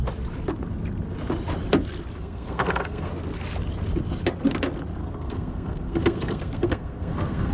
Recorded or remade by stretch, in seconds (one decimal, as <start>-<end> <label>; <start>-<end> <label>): 0.0-2.2 recorded; 2.2-3.1 remade; 3.1-5.0 recorded; 5.0-7.5 remade